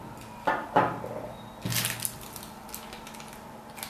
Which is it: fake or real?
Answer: real